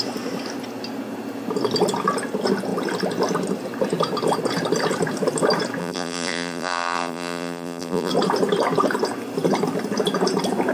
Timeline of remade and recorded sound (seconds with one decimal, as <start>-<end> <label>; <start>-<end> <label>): 0.0-5.8 recorded; 5.8-8.1 remade; 8.1-10.7 recorded